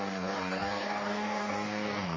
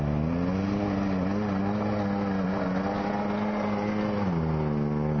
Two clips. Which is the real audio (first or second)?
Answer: second